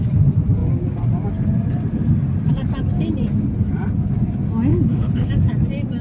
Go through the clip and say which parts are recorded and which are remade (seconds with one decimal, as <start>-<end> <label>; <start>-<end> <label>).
0.0-4.7 recorded; 4.7-5.3 remade; 5.3-6.0 recorded